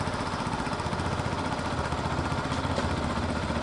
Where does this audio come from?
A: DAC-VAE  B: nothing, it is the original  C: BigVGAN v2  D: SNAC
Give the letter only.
B